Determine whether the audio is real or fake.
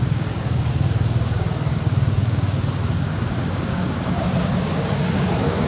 fake